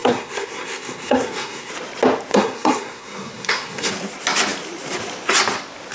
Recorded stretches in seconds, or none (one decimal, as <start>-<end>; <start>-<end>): 1.7-2.3; 3.9-5.9